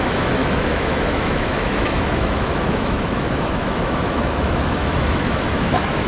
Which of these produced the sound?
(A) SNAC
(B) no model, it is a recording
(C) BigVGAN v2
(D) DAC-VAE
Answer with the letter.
D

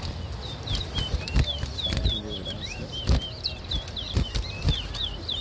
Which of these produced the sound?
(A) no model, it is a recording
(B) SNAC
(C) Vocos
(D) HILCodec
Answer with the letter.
A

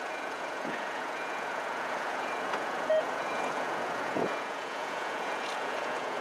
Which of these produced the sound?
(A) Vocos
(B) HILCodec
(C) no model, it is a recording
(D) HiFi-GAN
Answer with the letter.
A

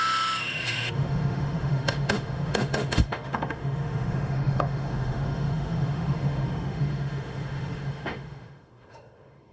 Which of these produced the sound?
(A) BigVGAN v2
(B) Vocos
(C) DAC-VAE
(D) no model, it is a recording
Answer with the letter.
C